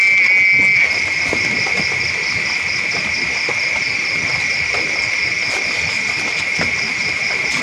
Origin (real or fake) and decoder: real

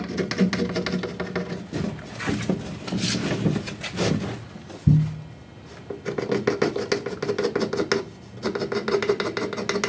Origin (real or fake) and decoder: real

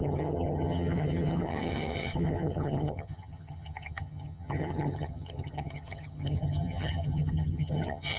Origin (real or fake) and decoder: fake, vocoder, HiFi-GAN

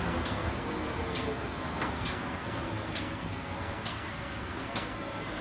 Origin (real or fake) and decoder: fake, codec, SNAC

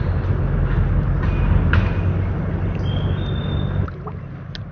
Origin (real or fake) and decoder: real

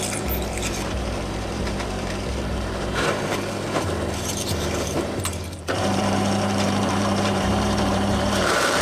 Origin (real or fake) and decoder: fake, vocoder, BigVGAN v2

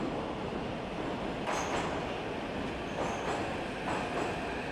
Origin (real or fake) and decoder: real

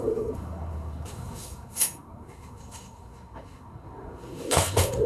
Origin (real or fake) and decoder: fake, codec, SNAC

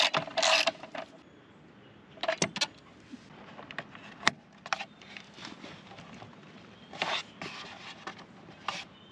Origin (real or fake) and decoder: real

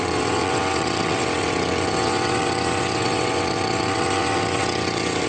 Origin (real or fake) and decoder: fake, vocoder, WaveNeXt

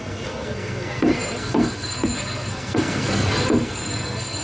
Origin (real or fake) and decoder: fake, codec, SNAC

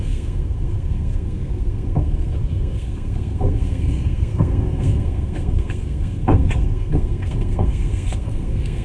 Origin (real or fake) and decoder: fake, codec, SNAC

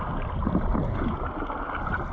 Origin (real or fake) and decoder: real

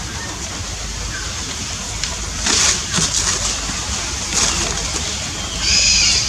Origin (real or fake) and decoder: real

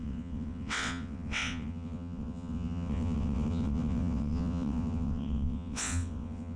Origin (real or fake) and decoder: fake, vocoder, WaveNeXt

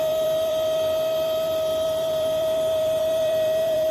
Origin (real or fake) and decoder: fake, vocoder, BigVGAN v2